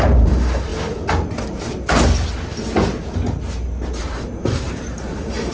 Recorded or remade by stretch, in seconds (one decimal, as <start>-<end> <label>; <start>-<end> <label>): 0.0-0.7 remade; 0.7-4.0 recorded; 4.0-5.5 remade

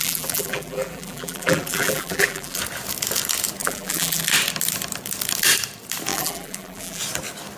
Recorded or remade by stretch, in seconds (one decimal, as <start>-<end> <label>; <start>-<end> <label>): 0.0-2.6 remade; 2.6-3.6 recorded; 3.6-4.2 remade; 4.2-6.1 recorded; 6.1-7.0 remade; 7.0-7.6 recorded

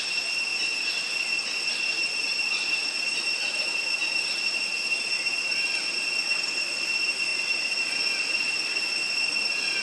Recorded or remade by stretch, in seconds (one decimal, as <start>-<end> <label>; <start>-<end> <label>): 0.0-9.8 remade

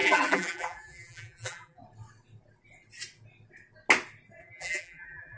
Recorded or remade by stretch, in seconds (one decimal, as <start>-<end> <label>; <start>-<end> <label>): 0.0-1.8 remade; 1.8-4.4 recorded; 4.4-5.4 remade

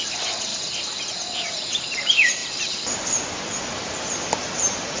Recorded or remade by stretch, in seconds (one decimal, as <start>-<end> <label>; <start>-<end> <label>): 0.0-0.5 remade; 0.5-1.7 recorded; 1.7-5.0 remade

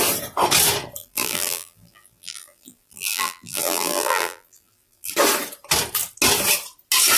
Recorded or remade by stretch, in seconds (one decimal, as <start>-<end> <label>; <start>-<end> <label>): 0.0-1.0 recorded; 1.0-5.1 remade; 5.1-7.2 recorded

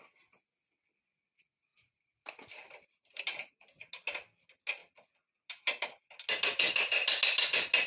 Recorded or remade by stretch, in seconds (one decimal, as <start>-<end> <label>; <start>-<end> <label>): 0.0-1.7 recorded; 1.7-3.2 remade; 3.2-7.9 recorded